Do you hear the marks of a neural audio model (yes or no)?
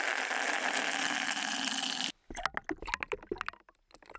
no